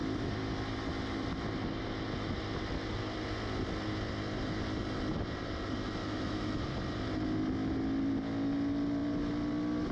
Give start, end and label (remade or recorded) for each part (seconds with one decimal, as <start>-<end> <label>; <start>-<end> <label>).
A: 0.0-6.0 recorded; 6.0-6.6 remade; 6.6-9.9 recorded